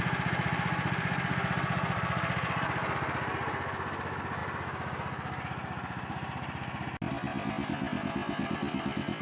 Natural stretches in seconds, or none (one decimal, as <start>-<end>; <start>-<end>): 0.0-9.2